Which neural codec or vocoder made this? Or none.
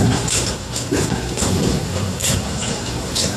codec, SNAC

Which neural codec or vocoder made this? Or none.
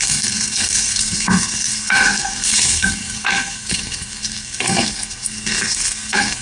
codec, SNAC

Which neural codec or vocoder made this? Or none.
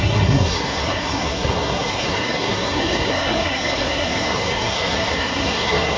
codec, SNAC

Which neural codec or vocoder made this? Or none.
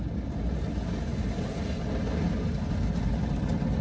none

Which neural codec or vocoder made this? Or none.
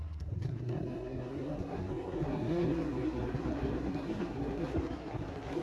codec, SNAC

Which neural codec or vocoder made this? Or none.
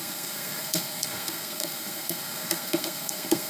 codec, SNAC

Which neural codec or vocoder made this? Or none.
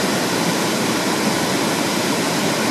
none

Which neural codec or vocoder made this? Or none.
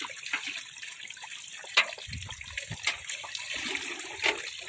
none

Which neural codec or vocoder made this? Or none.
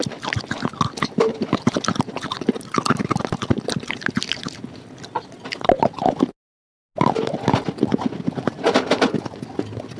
none